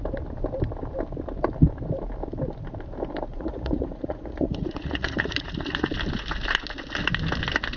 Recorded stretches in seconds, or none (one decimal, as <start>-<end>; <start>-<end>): 0.0-3.3; 5.9-7.8